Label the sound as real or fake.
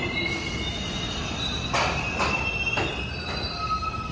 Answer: real